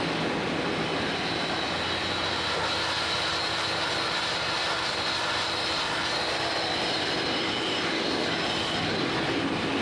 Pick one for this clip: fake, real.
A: real